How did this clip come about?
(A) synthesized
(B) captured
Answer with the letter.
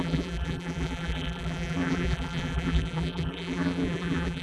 A